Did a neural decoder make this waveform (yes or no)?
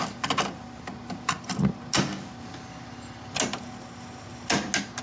no